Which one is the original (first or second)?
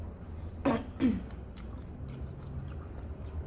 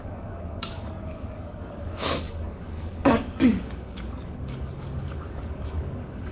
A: first